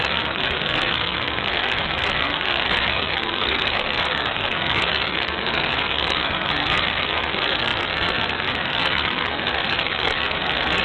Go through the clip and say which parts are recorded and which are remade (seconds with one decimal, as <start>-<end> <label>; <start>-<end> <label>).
0.0-10.8 remade